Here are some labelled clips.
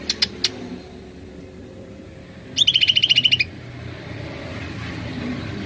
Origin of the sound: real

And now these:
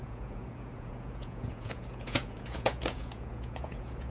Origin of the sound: fake